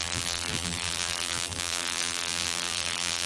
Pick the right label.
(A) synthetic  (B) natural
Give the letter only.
A